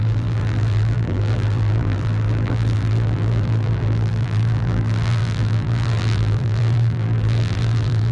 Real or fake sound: fake